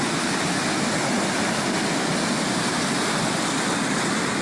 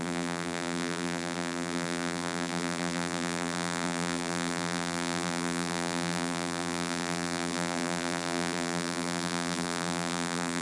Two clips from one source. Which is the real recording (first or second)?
first